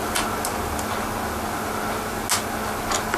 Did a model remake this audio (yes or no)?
no